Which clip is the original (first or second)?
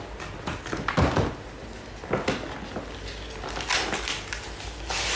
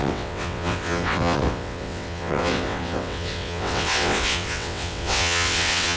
first